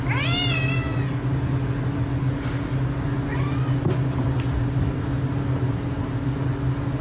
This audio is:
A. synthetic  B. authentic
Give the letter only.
B